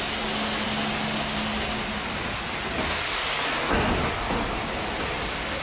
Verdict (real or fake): real